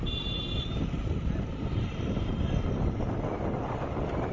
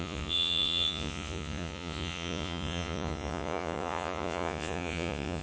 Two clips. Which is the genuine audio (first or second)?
first